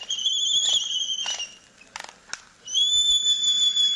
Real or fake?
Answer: real